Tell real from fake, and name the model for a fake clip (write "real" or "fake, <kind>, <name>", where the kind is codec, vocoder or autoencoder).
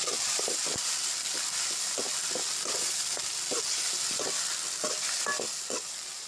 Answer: real